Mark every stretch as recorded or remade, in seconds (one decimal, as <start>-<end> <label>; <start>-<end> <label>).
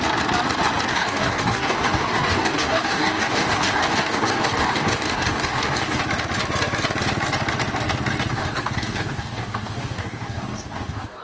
0.0-0.9 recorded; 0.9-6.0 remade; 6.0-8.3 recorded; 8.3-11.2 remade